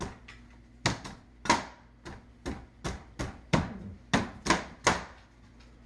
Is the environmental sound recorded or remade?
recorded